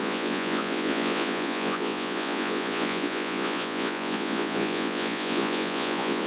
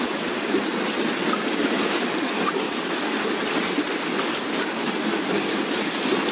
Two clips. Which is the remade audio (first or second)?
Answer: first